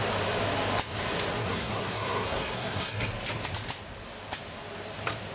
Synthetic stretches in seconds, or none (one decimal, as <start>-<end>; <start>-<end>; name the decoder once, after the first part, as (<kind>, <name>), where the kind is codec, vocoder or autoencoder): 1.4-3.1 (codec, SNAC)